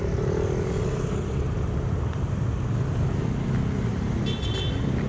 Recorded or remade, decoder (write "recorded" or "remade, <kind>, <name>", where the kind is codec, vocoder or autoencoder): recorded